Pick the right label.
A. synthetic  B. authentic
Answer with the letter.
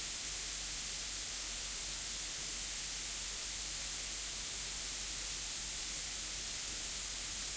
B